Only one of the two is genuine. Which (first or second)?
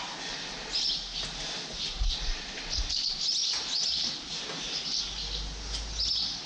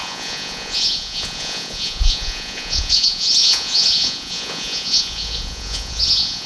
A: first